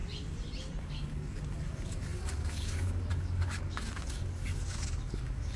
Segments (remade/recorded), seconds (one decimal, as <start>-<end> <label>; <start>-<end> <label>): 0.0-0.8 recorded; 0.8-5.6 remade